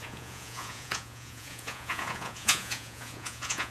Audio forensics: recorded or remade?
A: remade